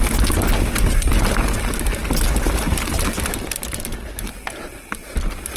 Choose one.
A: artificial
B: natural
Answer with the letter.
B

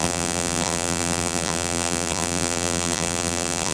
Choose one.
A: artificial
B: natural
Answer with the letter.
A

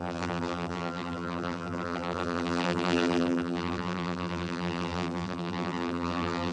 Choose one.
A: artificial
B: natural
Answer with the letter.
A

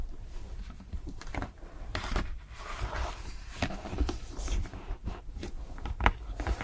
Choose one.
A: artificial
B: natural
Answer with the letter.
A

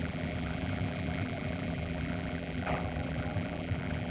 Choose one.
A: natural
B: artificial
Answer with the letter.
B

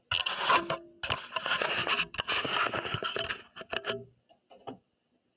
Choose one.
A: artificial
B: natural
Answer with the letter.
B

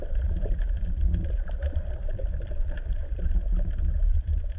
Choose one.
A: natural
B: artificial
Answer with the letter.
B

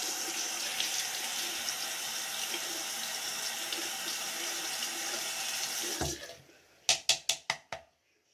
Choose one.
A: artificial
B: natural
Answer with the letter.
B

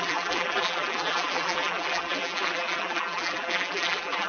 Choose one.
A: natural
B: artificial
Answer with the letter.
B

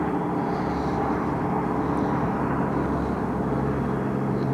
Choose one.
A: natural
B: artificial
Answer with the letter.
A